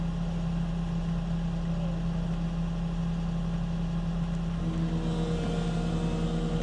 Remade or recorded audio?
recorded